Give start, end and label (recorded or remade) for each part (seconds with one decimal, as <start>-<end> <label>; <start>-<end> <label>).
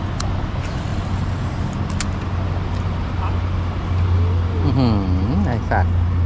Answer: 0.0-6.3 recorded